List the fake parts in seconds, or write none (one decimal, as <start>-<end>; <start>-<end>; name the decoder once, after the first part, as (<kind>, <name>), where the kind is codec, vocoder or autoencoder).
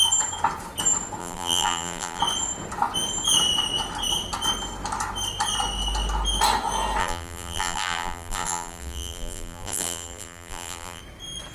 1.2-2.2 (vocoder, BigVGAN v2); 7.0-11.0